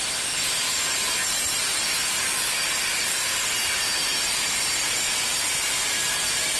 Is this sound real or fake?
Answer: real